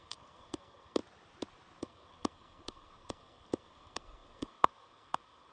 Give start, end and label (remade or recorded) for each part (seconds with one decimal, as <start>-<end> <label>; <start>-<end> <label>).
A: 0.0-1.0 remade; 1.0-1.8 recorded; 1.8-5.5 remade